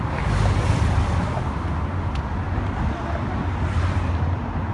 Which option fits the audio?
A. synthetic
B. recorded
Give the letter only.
B